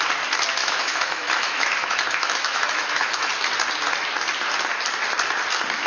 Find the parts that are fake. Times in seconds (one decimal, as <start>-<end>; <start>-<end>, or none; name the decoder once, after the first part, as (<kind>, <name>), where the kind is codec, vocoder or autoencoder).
0.6-3.3 (autoencoder, DAC-VAE)